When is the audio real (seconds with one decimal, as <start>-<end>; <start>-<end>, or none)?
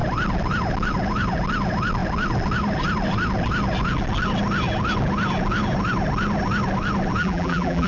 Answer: 0.0-7.2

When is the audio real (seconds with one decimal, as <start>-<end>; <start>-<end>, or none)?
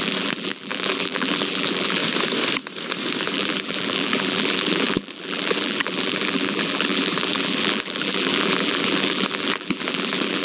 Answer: 2.0-3.2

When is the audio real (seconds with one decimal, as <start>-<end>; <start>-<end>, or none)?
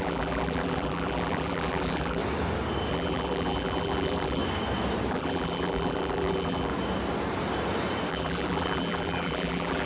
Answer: 2.2-2.9; 4.4-5.1; 6.7-8.1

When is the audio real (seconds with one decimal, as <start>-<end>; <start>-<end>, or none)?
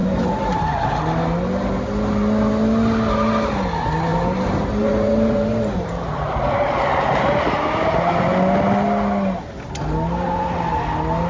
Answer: 1.0-4.1; 8.1-11.3